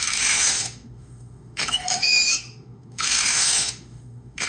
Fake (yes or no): yes